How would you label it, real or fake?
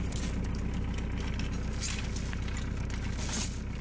real